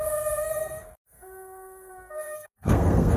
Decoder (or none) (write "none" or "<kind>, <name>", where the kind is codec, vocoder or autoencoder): codec, SNAC